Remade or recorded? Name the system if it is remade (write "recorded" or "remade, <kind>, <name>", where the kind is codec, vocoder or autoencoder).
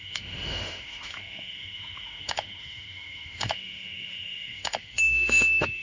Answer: remade, autoencoder, DAC-VAE